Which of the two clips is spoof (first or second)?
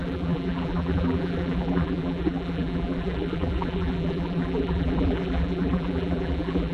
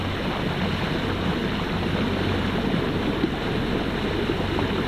first